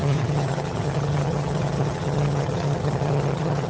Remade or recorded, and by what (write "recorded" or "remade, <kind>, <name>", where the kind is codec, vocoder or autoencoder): remade, vocoder, HiFi-GAN